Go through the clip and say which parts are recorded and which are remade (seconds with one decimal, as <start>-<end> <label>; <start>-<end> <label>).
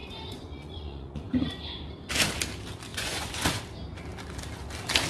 0.0-1.9 remade; 1.9-2.9 recorded; 2.9-3.6 remade; 3.6-5.1 recorded